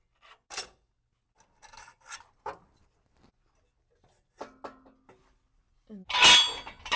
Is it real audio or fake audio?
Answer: real